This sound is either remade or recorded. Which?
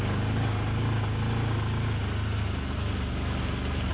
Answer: recorded